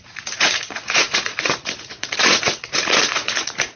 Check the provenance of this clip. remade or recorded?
remade